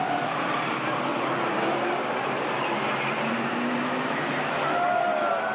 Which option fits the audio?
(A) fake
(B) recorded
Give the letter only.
B